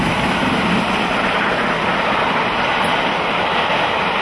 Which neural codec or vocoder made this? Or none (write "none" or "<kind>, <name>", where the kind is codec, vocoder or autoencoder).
none